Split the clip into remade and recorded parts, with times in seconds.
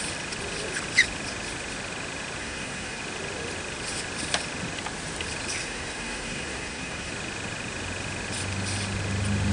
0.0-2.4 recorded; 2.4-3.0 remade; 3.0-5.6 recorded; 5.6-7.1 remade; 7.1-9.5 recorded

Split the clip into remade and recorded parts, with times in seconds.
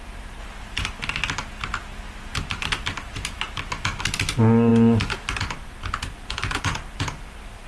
0.0-2.3 recorded; 2.3-3.7 remade; 3.7-4.7 recorded; 4.7-7.7 remade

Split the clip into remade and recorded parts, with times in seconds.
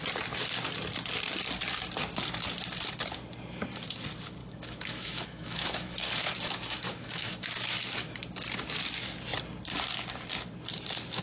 0.0-4.4 recorded; 4.4-8.2 remade; 8.2-11.2 recorded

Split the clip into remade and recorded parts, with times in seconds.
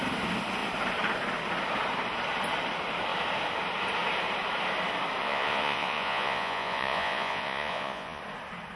0.0-5.2 recorded; 5.2-8.2 remade; 8.2-8.8 recorded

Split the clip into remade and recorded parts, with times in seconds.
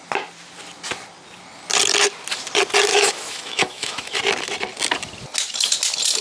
0.0-2.9 recorded; 2.9-4.2 remade; 4.2-6.2 recorded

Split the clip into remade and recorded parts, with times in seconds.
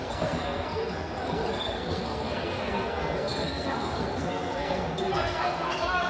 0.0-6.1 remade